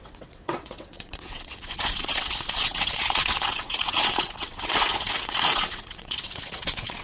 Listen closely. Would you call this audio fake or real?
fake